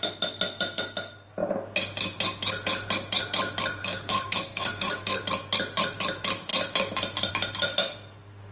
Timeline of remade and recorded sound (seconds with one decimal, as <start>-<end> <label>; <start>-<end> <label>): 0.0-3.8 recorded; 3.8-5.2 remade; 5.2-8.5 recorded